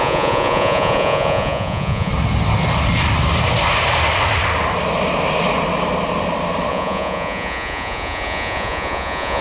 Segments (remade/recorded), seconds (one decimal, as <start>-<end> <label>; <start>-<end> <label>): 0.0-2.1 remade; 2.1-6.7 recorded; 6.7-9.4 remade